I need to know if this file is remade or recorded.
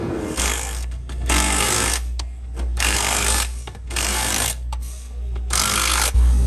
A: remade